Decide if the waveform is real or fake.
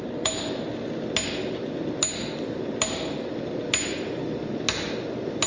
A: real